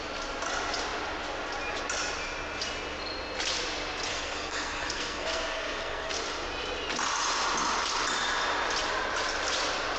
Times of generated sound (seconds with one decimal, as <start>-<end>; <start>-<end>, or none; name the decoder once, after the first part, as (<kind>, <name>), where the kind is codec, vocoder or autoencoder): 4.1-6.1 (codec, SNAC)